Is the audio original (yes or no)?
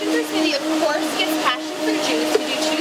yes